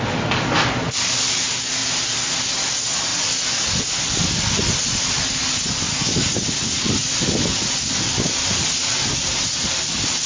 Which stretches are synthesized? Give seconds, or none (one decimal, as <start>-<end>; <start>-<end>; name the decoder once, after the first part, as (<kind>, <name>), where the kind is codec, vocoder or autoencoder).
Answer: none